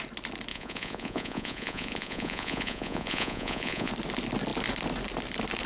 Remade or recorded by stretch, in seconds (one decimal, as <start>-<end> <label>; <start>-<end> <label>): 0.0-0.5 recorded; 0.5-3.9 remade; 3.9-5.7 recorded